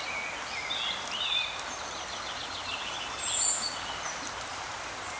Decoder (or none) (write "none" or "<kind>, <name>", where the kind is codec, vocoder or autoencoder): none